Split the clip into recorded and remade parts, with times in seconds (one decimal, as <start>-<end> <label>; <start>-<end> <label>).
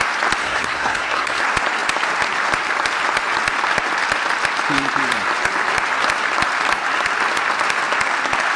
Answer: 0.0-0.4 recorded; 0.4-1.4 remade; 1.4-8.6 recorded